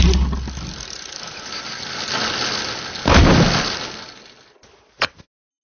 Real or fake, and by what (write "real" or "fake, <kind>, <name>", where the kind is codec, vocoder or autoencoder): real